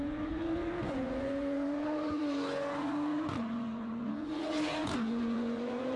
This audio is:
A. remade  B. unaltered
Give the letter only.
A